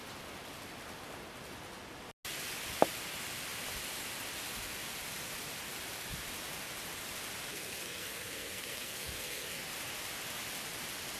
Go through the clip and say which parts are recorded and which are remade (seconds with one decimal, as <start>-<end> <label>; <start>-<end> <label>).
0.0-7.5 recorded; 7.5-9.6 remade; 9.6-11.2 recorded